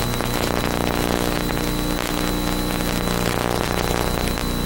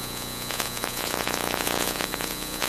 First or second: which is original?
first